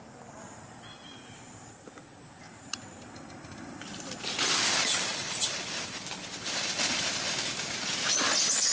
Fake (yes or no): no